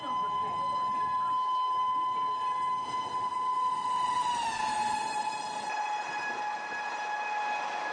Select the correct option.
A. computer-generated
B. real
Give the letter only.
B